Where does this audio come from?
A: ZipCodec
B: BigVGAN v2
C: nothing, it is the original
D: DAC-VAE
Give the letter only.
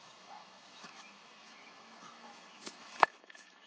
D